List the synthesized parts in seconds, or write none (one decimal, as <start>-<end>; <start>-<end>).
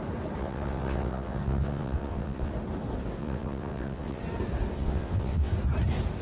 0.4-2.5; 3.2-4.2; 4.8-5.5